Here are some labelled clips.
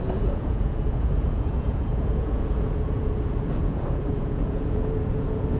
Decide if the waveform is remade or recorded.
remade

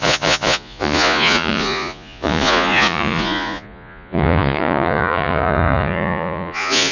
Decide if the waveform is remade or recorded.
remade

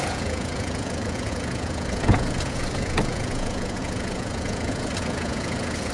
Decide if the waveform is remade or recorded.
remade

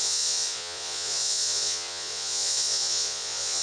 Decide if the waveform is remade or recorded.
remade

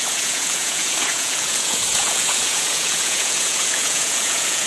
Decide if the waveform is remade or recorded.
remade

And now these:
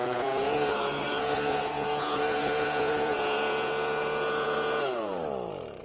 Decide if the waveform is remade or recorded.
remade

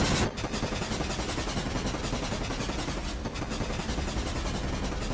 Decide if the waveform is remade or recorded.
recorded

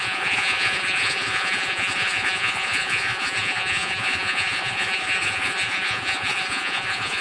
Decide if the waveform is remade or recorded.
remade